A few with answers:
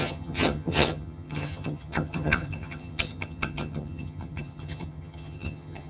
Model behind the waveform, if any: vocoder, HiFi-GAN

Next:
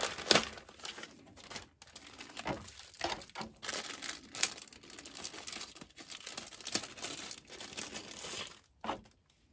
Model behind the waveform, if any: none